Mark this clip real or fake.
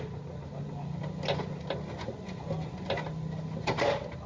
real